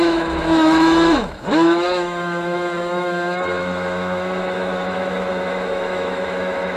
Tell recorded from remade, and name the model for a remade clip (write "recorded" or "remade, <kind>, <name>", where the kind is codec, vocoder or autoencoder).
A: remade, autoencoder, DAC-VAE